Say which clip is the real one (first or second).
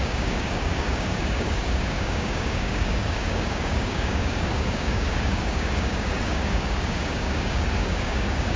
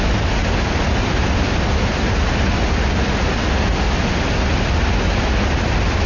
second